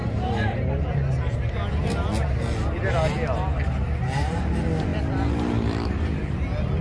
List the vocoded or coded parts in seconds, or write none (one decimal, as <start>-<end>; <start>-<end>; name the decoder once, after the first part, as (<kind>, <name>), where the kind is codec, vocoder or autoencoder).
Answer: none